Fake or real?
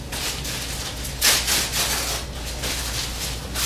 real